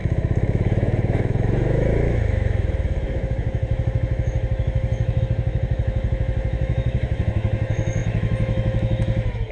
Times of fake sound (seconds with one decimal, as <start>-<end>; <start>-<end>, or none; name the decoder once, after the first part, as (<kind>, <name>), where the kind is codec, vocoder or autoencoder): 0.0-9.5 (autoencoder, DAC-VAE)